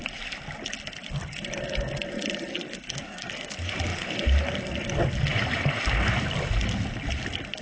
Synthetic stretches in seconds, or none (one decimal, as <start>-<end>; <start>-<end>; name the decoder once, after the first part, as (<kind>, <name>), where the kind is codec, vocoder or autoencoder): 2.5-3.5 (codec, SNAC)